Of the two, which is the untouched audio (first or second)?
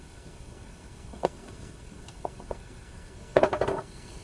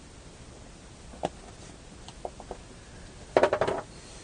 second